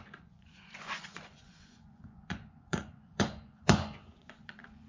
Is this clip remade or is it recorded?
remade